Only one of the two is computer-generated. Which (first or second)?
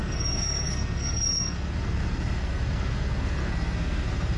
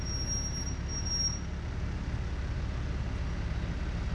first